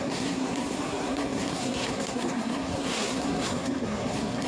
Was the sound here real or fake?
fake